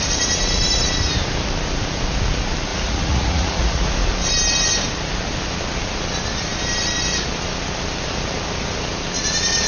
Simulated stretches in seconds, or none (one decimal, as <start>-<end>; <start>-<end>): 2.7-3.9

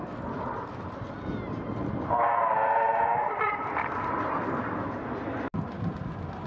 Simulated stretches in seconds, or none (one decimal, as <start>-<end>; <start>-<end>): none

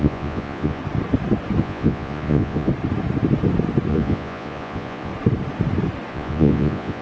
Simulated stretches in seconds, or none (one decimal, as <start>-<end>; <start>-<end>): 0.0-0.8; 1.6-2.7; 3.9-5.1; 6.1-7.0